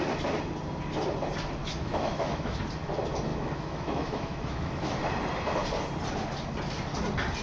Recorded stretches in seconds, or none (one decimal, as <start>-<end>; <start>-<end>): 0.0-1.6; 2.6-3.3; 5.0-7.4